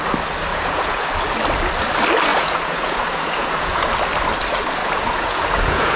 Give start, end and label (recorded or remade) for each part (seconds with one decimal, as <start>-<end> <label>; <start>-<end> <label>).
0.0-0.5 recorded; 0.5-1.1 remade; 1.1-2.3 recorded; 2.3-3.9 remade; 3.9-4.8 recorded; 4.8-6.0 remade